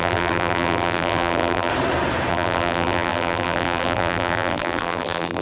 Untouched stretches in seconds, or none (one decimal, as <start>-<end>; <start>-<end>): 1.7-2.3